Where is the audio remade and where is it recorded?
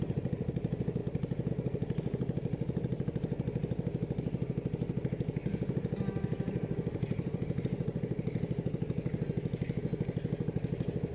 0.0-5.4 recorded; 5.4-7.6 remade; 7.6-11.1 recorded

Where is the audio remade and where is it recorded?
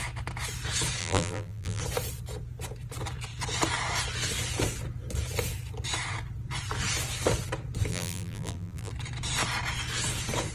0.0-1.0 recorded; 1.0-1.8 remade; 1.8-7.9 recorded; 7.9-8.9 remade; 8.9-10.5 recorded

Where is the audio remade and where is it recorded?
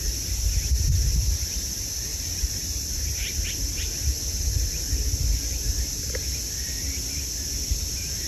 0.0-2.1 recorded; 2.1-3.0 remade; 3.0-8.3 recorded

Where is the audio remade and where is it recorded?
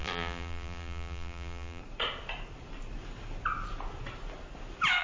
0.0-1.8 remade; 1.8-5.0 recorded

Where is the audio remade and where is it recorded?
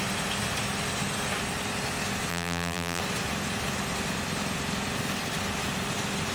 0.0-2.3 recorded; 2.3-3.0 remade; 3.0-6.3 recorded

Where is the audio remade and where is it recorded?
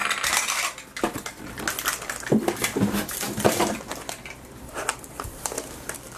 0.0-2.6 recorded; 2.6-6.2 remade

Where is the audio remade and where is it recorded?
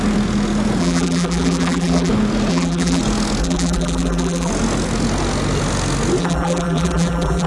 0.0-0.8 recorded; 0.8-2.1 remade; 2.1-2.5 recorded; 2.5-3.0 remade; 3.0-3.4 recorded; 3.4-4.5 remade; 4.5-6.2 recorded; 6.2-7.5 remade